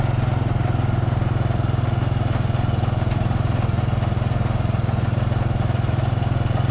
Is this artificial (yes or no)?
no